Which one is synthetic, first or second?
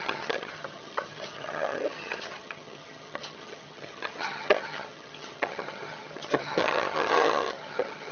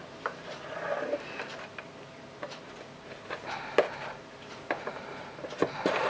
first